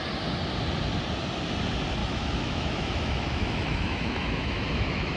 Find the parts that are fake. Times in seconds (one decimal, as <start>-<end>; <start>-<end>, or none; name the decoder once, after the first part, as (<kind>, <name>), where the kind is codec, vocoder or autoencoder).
2.0-5.2 (autoencoder, DAC-VAE)